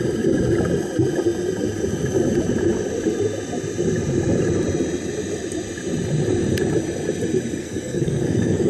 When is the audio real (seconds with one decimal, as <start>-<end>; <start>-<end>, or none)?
0.0-7.6